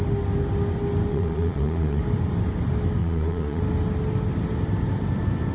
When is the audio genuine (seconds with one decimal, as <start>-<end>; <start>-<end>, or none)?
0.0-1.1; 2.0-3.0; 3.6-5.5